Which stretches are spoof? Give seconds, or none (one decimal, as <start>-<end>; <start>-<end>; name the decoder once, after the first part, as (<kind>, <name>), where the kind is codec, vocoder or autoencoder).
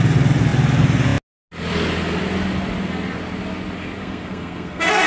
4.0-5.1 (codec, SNAC)